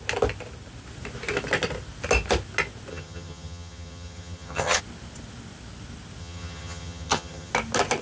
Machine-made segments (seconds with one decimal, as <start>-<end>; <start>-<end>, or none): 2.9-4.8; 6.2-7.5